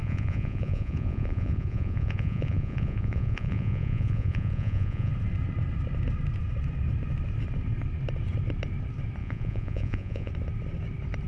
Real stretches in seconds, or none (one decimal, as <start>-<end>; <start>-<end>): 5.1-9.2; 10.3-11.3

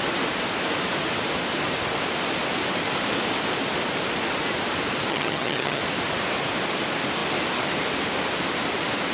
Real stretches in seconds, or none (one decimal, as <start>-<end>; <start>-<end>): 0.0-5.1; 5.8-9.1

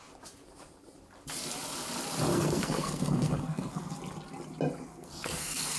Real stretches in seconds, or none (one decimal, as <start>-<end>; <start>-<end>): 0.0-2.3; 4.0-4.9

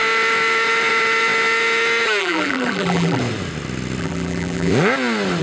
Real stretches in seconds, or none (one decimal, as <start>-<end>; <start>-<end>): 0.0-2.2; 3.2-4.0; 4.7-5.4